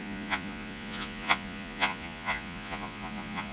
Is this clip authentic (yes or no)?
no